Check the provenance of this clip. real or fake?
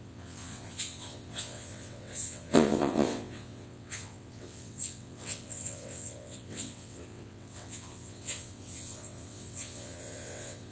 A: fake